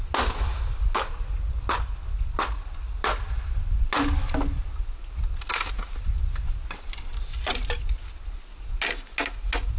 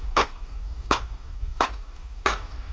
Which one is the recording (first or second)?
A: first